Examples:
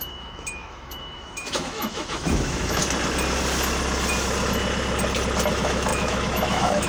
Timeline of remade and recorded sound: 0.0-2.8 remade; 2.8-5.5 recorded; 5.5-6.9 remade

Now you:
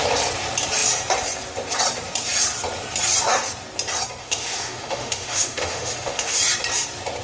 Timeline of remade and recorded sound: 0.0-4.2 recorded; 4.2-6.4 remade; 6.4-7.2 recorded

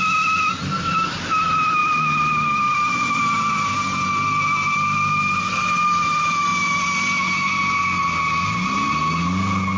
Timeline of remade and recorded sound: 0.0-9.8 recorded